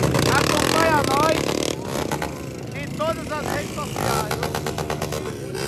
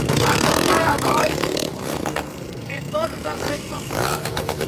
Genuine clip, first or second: first